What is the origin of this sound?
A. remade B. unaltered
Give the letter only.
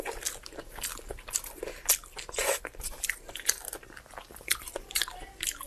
B